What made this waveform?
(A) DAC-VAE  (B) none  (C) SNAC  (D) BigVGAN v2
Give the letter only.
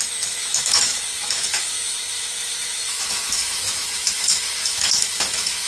A